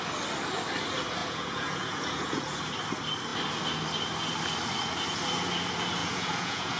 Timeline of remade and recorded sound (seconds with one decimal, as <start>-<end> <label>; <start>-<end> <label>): 0.0-1.2 recorded; 1.2-2.6 remade; 2.6-6.0 recorded; 6.0-6.8 remade